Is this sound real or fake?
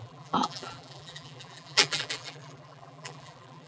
fake